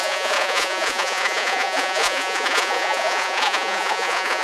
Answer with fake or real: fake